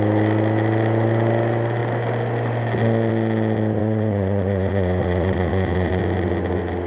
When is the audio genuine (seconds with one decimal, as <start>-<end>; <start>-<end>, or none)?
0.0-3.8; 6.0-6.9